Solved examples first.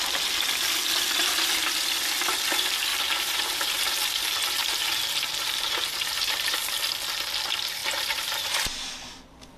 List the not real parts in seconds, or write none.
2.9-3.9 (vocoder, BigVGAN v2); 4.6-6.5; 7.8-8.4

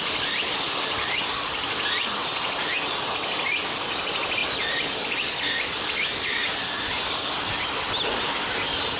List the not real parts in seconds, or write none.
none

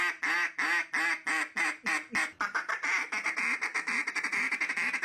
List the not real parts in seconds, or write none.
none

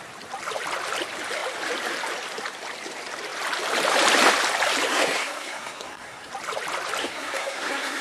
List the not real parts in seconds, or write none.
4.9-6.3 (codec, SNAC); 7.0-8.0

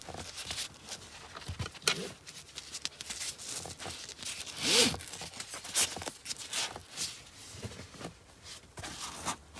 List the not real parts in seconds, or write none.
none

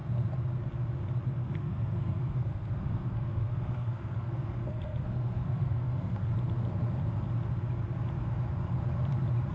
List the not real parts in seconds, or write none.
1.3-6.3 (codec, SNAC)

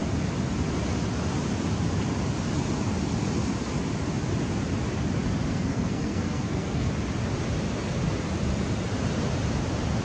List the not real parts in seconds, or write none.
5.5-6.9 (codec, SNAC)

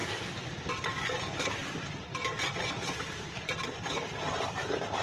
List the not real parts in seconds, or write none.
3.0-5.0 (vocoder, BigVGAN v2)